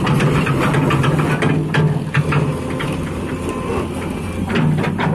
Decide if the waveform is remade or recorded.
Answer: recorded